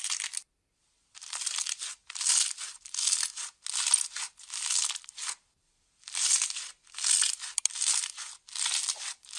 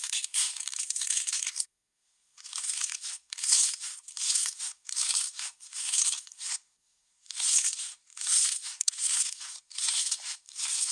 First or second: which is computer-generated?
second